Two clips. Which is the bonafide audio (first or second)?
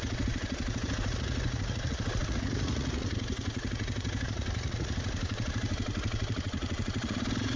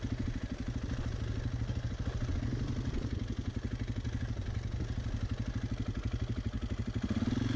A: second